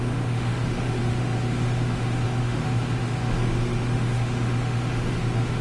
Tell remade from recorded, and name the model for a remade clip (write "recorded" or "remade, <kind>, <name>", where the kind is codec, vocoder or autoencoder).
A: remade, autoencoder, DAC-VAE